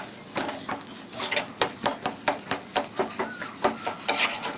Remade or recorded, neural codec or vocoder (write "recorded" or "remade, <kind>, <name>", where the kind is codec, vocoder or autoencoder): recorded